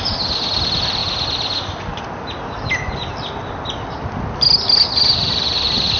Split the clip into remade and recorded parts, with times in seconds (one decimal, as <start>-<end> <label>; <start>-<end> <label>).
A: 0.0-6.0 recorded